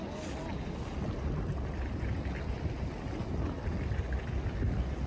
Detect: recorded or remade recorded